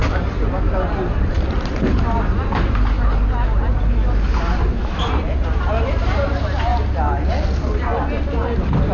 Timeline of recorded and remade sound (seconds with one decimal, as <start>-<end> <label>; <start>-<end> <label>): 0.0-8.9 recorded